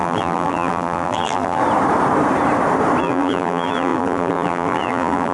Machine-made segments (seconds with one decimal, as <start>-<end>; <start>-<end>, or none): 0.0-1.6; 3.0-5.3